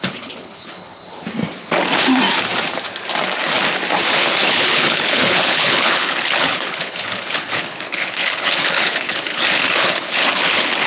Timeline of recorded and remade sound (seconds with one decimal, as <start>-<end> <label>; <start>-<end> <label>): 0.0-1.0 remade; 1.0-4.1 recorded; 4.1-10.9 remade